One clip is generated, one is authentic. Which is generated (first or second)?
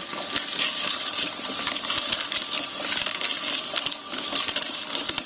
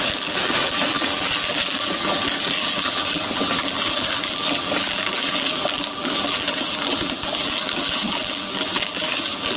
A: second